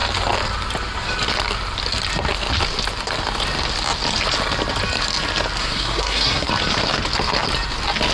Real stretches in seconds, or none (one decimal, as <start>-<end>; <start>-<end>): 0.0-5.6; 6.5-8.1